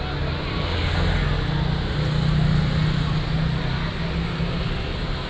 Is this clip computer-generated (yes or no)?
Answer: no